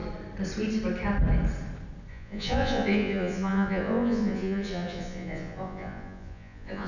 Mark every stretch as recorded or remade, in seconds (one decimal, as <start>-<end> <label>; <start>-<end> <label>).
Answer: 0.0-2.1 recorded; 2.1-6.9 remade